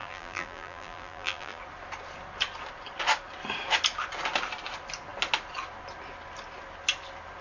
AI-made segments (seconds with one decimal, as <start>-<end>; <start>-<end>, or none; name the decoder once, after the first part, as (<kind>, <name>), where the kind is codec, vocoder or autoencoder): 0.0-1.6 (vocoder, BigVGAN v2)

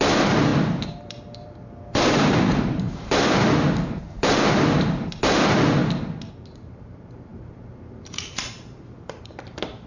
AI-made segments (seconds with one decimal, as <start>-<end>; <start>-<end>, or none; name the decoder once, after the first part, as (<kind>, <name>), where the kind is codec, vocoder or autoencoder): 0.0-3.4 (vocoder, BigVGAN v2); 4.0-5.8; 6.5-9.9

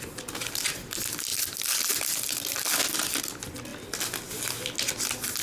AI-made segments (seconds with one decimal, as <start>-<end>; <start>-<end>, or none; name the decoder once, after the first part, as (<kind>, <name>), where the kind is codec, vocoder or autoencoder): none

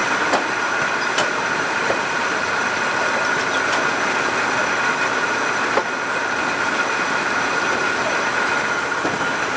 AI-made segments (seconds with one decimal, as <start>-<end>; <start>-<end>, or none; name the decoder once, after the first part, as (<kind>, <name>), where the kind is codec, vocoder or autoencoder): 0.0-3.0 (vocoder, BigVGAN v2)

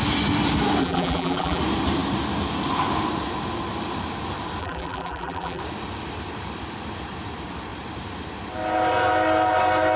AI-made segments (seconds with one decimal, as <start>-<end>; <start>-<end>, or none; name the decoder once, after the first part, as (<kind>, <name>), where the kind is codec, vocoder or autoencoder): 0.8-1.6 (vocoder, BigVGAN v2); 4.6-5.6

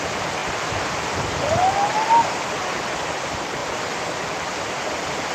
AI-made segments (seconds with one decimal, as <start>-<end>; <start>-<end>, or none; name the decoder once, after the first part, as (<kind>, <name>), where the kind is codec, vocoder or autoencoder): none

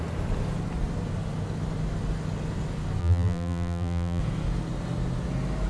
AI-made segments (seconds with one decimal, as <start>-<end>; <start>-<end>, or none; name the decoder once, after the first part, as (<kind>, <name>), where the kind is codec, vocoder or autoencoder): 3.0-4.2 (vocoder, BigVGAN v2)

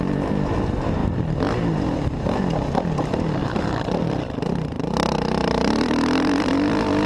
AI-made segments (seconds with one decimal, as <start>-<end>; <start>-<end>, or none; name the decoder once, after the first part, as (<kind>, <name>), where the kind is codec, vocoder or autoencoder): 1.0-1.6 (vocoder, BigVGAN v2); 3.4-6.5